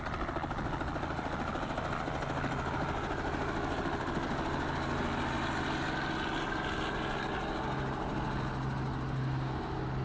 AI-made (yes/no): no